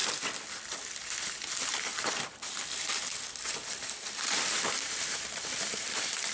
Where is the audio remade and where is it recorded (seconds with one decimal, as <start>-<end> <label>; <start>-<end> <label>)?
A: 0.0-6.3 remade